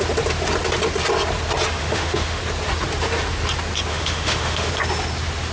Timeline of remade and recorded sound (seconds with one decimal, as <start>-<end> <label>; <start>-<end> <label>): 0.0-1.8 recorded; 1.8-2.4 remade; 2.4-3.9 recorded; 3.9-4.7 remade; 4.7-5.5 recorded